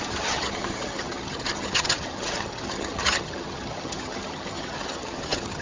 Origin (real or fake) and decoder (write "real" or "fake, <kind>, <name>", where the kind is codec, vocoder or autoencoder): fake, vocoder, HiFi-GAN